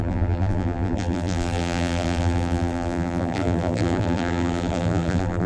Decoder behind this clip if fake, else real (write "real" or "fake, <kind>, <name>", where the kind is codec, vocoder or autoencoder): fake, vocoder, BigVGAN v2